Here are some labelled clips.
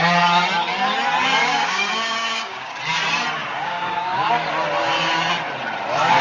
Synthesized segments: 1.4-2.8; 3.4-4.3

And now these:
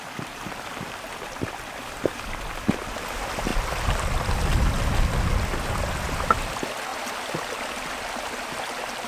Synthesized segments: 6.9-8.2